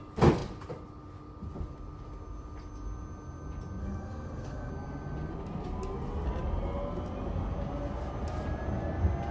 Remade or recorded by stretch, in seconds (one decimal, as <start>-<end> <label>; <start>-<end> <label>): 0.0-3.8 recorded; 3.8-4.7 remade; 4.7-9.3 recorded